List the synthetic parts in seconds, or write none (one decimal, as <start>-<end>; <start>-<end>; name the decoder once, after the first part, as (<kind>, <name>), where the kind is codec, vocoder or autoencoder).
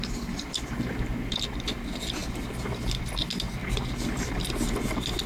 3.6-4.3 (vocoder, BigVGAN v2)